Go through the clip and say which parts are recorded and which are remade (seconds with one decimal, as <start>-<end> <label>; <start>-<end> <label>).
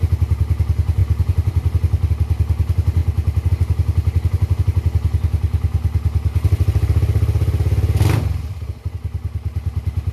0.0-1.0 recorded; 1.0-2.1 remade; 2.1-10.1 recorded